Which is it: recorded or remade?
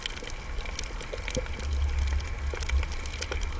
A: recorded